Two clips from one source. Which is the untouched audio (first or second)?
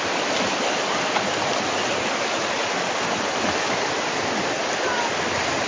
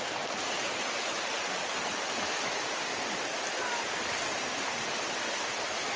second